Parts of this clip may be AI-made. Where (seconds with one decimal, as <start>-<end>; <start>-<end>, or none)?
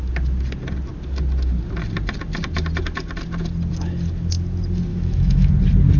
4.9-5.5